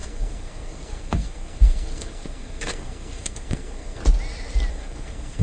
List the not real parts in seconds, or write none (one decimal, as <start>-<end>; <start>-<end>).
0.0-4.0; 4.7-5.4